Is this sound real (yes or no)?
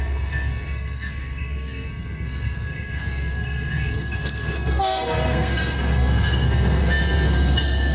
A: no